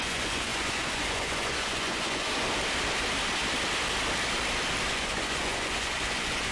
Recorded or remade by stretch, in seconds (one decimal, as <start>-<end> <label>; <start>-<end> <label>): 0.0-2.3 remade; 2.3-4.9 recorded; 4.9-6.5 remade